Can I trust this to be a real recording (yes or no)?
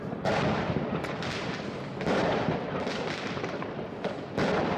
no